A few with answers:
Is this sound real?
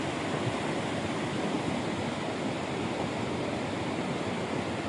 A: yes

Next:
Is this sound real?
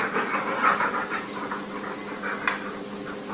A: yes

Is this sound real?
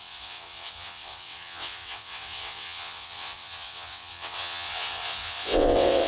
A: no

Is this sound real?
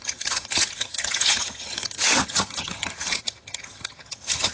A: no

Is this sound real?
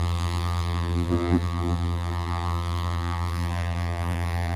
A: no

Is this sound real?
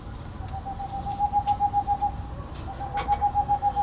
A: yes